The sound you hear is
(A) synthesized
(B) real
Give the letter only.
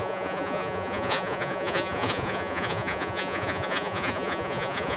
A